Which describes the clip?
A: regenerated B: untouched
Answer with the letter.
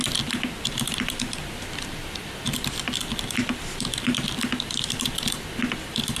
B